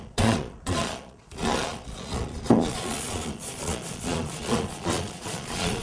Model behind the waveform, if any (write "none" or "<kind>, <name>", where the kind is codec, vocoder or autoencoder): vocoder, Vocos